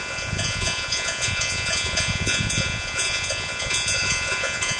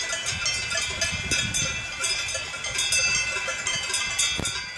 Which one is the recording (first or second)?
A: second